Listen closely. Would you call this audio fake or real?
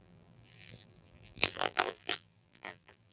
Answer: fake